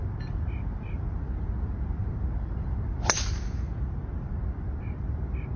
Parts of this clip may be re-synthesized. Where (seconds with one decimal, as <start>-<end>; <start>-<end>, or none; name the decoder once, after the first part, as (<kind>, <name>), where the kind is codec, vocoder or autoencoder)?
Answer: none